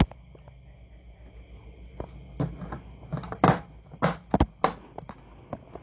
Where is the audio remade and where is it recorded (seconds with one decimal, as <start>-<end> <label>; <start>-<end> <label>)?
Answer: 0.0-5.8 recorded